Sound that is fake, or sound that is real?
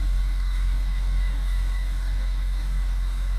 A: fake